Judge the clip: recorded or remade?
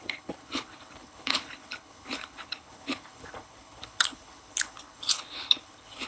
remade